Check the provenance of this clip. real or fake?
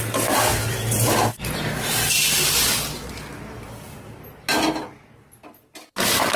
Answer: real